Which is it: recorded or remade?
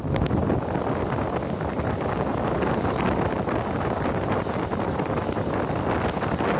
recorded